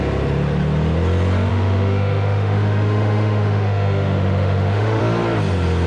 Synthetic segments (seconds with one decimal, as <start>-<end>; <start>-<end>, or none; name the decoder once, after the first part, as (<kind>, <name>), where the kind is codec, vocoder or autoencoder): 1.5-5.0 (autoencoder, DAC-VAE)